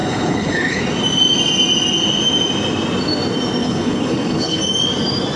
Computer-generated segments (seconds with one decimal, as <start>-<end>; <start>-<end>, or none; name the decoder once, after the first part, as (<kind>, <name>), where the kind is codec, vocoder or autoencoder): 0.0-0.8 (codec, HILCodec); 3.6-4.6